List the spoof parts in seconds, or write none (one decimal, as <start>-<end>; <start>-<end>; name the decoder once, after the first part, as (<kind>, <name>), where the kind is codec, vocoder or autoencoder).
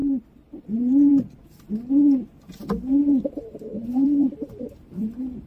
0.6-1.1 (vocoder, BigVGAN v2); 3.0-5.5